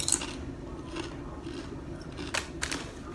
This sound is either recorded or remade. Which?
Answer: recorded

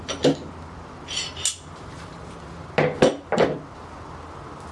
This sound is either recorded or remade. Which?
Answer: recorded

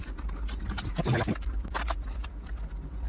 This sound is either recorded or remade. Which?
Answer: recorded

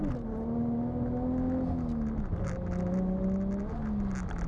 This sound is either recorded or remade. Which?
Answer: recorded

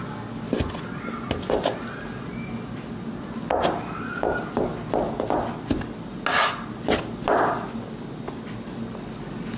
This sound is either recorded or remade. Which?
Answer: recorded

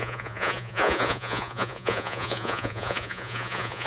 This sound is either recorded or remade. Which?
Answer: remade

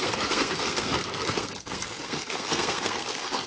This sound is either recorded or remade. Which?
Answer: remade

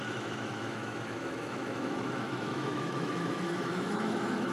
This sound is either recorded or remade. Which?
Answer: remade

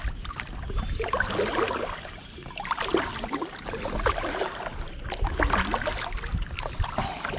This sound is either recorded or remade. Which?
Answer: recorded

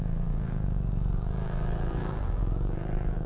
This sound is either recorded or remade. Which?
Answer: remade